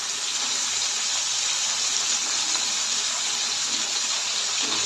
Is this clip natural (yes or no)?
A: yes